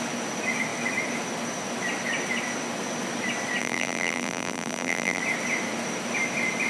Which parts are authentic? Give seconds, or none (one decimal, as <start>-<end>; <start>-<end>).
0.0-3.6; 5.2-6.7